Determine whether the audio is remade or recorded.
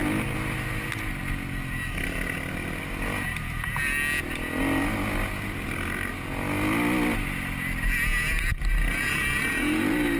recorded